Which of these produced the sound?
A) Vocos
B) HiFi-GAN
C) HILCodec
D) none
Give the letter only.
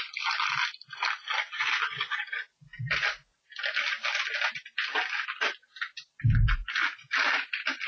D